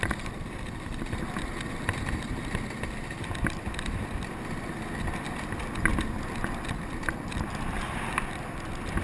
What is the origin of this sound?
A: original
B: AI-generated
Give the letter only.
A